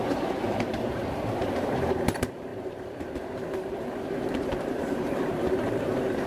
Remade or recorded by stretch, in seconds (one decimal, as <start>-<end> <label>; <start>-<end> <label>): 0.0-6.3 remade